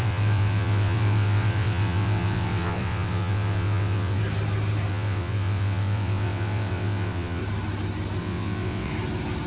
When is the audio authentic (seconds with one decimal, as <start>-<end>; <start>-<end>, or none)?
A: 4.2-4.9; 7.4-8.2; 8.9-9.5